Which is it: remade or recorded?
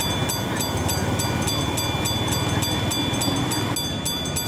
recorded